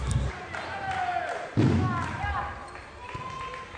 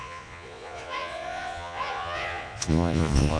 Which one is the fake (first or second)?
second